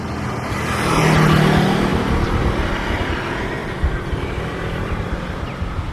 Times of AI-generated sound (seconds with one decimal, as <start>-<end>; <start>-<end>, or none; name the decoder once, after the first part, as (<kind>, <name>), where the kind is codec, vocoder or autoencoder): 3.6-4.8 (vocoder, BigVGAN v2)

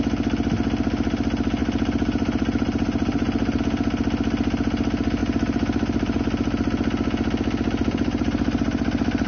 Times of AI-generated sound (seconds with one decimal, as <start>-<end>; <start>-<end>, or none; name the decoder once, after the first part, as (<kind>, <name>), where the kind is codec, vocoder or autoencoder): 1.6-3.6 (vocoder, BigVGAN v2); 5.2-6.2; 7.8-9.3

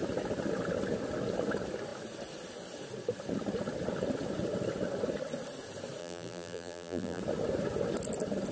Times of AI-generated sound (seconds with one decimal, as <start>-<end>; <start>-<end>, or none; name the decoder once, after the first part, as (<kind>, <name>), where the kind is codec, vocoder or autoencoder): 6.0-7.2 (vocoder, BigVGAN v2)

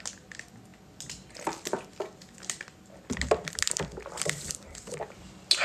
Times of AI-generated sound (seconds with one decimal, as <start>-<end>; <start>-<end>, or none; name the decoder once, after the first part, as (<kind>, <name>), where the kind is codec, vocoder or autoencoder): none

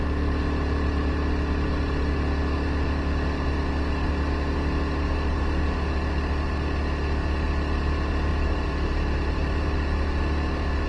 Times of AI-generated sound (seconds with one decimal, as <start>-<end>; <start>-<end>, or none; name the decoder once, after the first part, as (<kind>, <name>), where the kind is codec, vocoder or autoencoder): 8.3-9.7 (vocoder, BigVGAN v2)

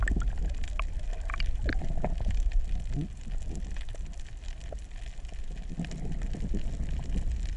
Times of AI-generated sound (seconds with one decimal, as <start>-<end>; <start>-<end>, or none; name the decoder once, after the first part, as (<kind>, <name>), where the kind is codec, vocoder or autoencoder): none